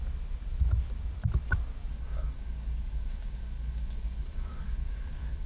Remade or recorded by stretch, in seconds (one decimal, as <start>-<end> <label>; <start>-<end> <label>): 0.0-1.9 recorded; 1.9-5.5 remade